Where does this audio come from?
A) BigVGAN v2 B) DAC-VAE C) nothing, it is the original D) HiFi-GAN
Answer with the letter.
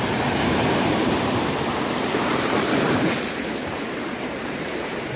A